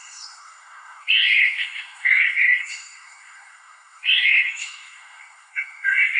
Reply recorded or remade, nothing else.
remade